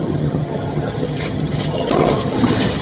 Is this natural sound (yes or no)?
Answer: no